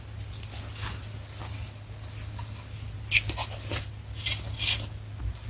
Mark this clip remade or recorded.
recorded